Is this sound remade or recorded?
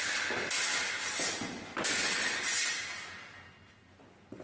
recorded